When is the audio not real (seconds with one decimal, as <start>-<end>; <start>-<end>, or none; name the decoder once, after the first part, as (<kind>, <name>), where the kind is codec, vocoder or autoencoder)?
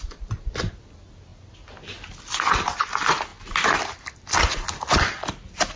none